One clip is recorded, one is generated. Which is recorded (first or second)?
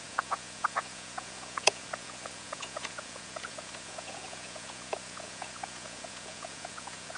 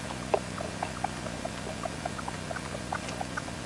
second